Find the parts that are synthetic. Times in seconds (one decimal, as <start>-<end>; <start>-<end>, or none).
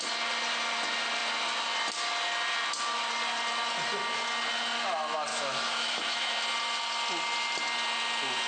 5.3-6.3